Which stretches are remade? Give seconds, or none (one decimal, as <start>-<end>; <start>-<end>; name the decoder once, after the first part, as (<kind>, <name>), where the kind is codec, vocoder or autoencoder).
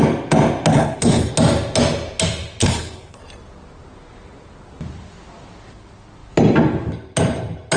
0.7-1.3 (codec, HILCodec); 2.6-3.2